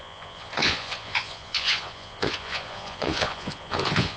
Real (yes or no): no